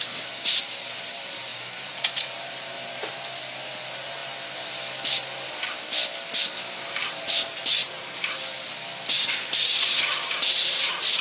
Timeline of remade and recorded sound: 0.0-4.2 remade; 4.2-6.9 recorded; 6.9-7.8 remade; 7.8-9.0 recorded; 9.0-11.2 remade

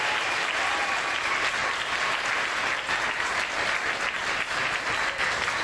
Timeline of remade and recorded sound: 0.0-5.6 recorded

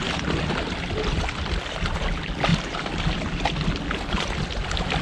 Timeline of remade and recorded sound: 0.0-2.5 recorded; 2.5-3.0 remade; 3.0-5.0 recorded

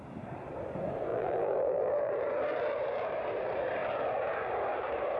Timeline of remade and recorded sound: 0.0-1.1 recorded; 1.1-2.1 remade; 2.1-5.2 recorded

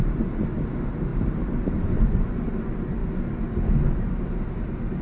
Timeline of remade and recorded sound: 0.0-1.1 recorded; 1.1-2.4 remade; 2.4-5.0 recorded